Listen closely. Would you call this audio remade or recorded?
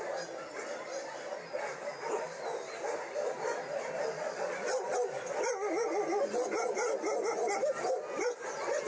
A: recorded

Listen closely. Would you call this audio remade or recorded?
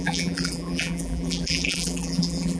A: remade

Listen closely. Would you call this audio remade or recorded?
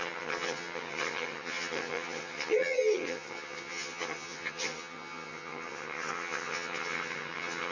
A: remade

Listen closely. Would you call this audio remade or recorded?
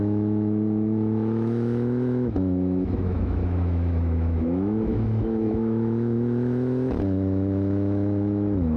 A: remade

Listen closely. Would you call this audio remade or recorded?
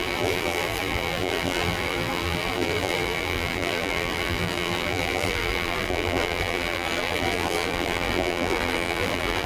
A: remade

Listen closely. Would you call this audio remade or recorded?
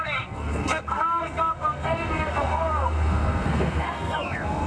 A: remade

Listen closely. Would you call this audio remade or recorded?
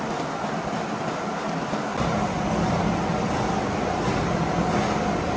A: recorded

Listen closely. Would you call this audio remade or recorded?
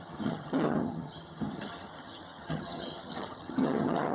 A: remade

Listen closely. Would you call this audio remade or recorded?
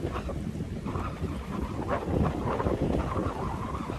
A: recorded